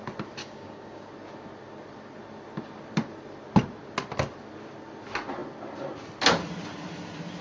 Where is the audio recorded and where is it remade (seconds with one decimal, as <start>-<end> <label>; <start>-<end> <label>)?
0.0-0.4 recorded; 0.4-1.1 remade; 1.1-7.4 recorded